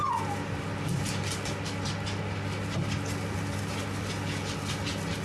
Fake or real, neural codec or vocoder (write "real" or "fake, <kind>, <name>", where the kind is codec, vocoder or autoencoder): real